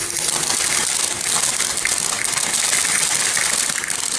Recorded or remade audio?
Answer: recorded